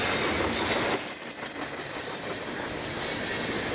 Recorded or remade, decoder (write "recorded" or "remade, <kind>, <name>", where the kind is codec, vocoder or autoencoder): recorded